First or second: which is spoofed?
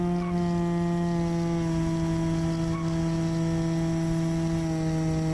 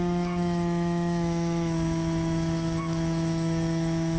second